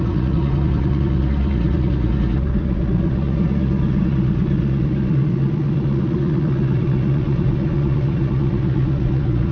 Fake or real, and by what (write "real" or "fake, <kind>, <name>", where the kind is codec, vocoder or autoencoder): fake, vocoder, Vocos